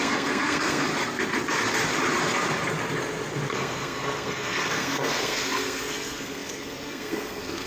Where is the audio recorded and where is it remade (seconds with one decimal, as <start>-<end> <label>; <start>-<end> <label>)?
0.0-0.9 remade; 0.9-3.5 recorded; 3.5-7.7 remade